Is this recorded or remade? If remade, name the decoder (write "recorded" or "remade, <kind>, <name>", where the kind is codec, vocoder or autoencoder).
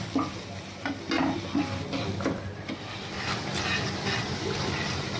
recorded